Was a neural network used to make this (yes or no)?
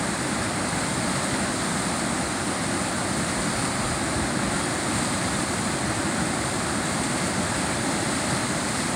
no